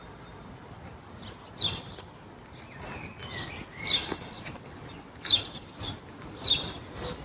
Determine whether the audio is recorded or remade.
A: recorded